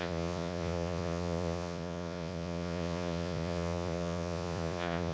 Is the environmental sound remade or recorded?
remade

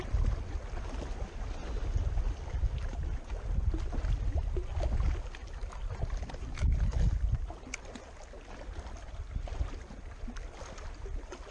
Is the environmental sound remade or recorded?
recorded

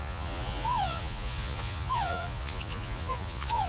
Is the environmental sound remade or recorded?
remade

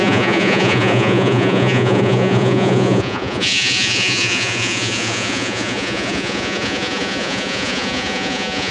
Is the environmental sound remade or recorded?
remade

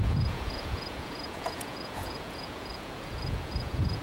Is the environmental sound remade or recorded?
remade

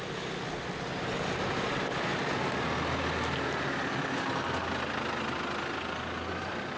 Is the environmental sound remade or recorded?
recorded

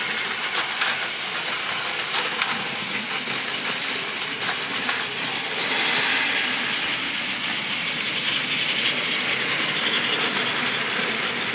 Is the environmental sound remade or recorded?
recorded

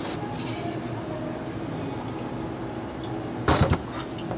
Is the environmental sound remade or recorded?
recorded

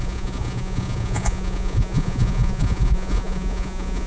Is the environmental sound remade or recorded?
remade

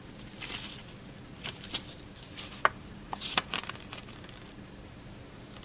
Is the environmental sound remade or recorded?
recorded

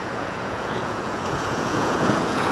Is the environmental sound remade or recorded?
remade